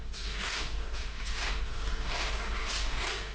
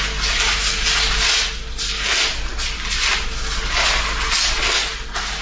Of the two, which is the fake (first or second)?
first